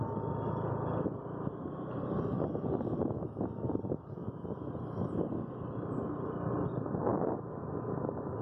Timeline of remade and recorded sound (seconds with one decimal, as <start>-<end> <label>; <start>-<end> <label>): 0.0-4.2 recorded; 4.2-4.7 remade; 4.7-8.4 recorded